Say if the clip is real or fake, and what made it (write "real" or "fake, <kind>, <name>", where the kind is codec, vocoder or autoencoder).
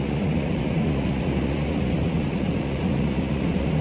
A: fake, vocoder, Vocos